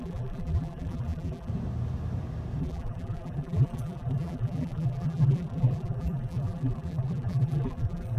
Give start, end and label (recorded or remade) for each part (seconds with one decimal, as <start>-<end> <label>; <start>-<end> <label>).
0.0-1.5 remade; 1.5-2.6 recorded; 2.6-8.2 remade